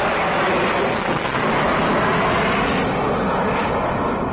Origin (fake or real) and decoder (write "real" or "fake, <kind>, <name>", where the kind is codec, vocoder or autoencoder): real